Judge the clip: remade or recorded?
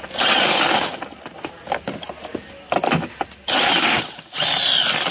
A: recorded